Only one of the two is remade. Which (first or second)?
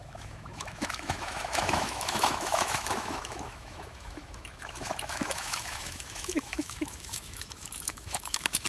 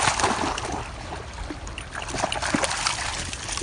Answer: first